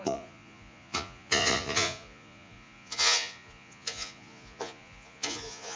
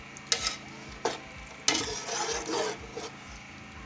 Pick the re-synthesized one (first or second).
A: first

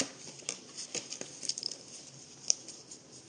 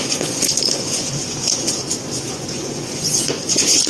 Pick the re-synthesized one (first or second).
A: second